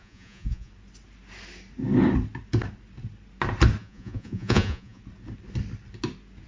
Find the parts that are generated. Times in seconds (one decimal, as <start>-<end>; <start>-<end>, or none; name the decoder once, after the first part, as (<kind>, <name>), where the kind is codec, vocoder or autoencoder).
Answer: 0.0-0.7 (vocoder, Vocos); 3.8-5.0